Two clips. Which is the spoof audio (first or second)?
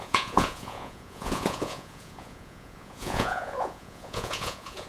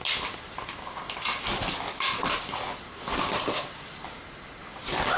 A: first